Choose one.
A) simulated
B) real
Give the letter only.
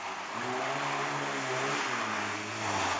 B